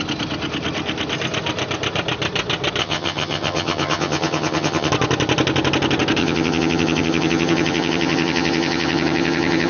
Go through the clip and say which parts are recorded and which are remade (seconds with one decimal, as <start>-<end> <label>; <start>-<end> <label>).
0.0-2.8 recorded; 2.8-4.9 remade; 4.9-6.2 recorded; 6.2-9.7 remade